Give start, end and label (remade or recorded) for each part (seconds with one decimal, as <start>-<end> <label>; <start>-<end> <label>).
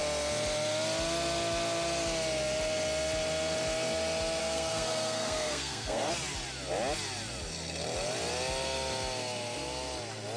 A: 0.0-4.4 recorded; 4.4-6.1 remade; 6.1-10.4 recorded